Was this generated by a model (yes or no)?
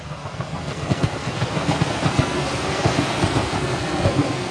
yes